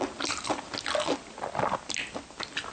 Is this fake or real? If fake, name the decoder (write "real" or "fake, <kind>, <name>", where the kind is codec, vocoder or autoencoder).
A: real